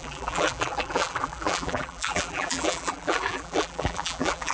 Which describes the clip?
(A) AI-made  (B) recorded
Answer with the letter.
A